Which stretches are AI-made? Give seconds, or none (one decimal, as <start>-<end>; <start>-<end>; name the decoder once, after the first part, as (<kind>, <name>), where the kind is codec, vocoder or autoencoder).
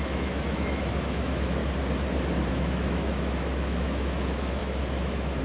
0.0-1.6 (autoencoder, DAC-VAE); 2.5-5.4